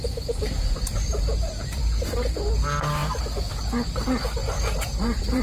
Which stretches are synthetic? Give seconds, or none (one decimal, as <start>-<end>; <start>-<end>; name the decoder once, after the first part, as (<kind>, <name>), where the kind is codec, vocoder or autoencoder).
0.0-1.8 (vocoder, BigVGAN v2); 4.4-5.4